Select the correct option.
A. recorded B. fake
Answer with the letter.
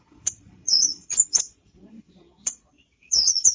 B